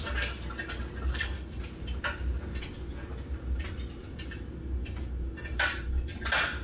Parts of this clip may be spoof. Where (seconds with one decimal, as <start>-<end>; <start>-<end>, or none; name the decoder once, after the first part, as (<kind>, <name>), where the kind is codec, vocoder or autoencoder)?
1.1-1.6 (codec, SNAC)